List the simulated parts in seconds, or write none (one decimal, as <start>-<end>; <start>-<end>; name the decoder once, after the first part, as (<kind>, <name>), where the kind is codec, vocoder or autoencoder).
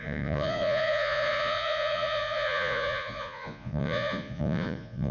0.0-5.1 (vocoder, Vocos)